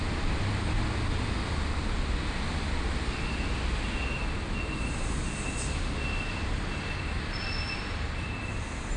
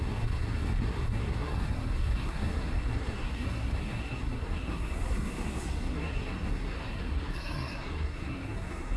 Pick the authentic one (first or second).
first